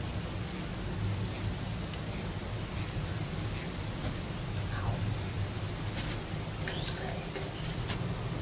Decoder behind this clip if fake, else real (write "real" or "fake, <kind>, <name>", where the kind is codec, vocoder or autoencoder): real